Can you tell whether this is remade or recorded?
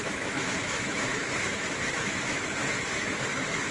remade